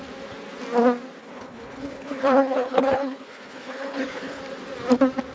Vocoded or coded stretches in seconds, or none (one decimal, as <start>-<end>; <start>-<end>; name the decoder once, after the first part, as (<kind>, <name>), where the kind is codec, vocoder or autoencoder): 1.2-4.4 (codec, HILCodec)

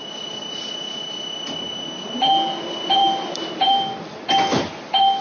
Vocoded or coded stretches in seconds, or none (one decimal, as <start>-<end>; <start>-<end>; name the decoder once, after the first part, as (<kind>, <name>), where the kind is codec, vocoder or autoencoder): 3.0-4.3 (vocoder, BigVGAN v2)